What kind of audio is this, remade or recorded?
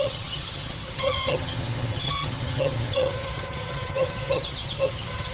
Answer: remade